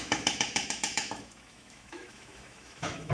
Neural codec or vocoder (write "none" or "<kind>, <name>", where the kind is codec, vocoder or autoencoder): autoencoder, DAC-VAE